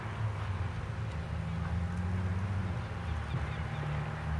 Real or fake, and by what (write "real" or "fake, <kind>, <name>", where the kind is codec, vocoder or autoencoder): real